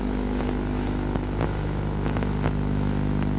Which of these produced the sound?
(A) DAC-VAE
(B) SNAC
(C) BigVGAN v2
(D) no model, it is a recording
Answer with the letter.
A